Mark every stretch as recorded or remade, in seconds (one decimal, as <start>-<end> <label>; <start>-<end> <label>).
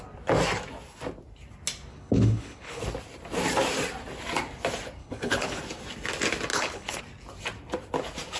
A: 0.0-1.9 recorded; 1.9-2.8 remade; 2.8-5.0 recorded; 5.0-5.6 remade; 5.6-6.5 recorded; 6.5-7.0 remade; 7.0-8.4 recorded